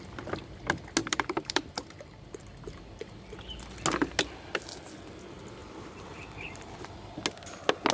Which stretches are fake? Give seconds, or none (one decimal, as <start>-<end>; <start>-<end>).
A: 1.0-2.4; 5.6-7.2